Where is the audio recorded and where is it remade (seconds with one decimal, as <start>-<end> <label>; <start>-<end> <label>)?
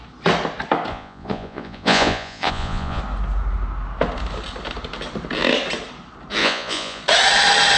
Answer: 0.0-0.9 recorded; 0.9-3.0 remade; 3.0-6.4 recorded; 6.4-7.0 remade; 7.0-7.8 recorded